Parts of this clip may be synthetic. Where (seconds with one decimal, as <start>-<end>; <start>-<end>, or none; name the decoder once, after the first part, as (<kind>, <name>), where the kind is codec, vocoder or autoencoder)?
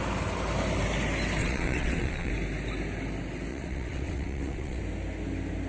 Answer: 1.4-2.3 (vocoder, WaveNeXt); 3.5-4.8